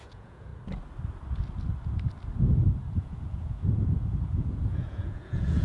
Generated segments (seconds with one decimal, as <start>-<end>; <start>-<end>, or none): 0.0-0.5; 3.0-5.6

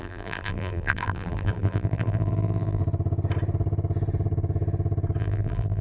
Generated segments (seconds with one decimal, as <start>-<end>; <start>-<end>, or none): 0.0-2.8; 5.2-5.8

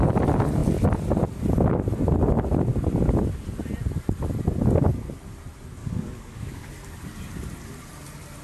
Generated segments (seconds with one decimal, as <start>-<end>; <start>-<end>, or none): 5.8-6.7